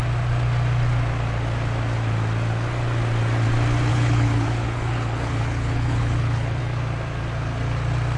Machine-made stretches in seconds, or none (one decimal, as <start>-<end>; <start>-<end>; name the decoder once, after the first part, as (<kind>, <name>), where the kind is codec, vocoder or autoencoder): 3.9-6.6 (codec, HILCodec)